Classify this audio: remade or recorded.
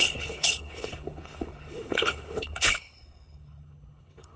remade